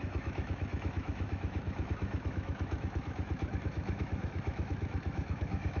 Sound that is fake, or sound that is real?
fake